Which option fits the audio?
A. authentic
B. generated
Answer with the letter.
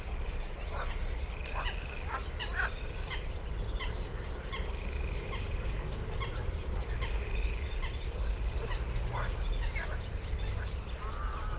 A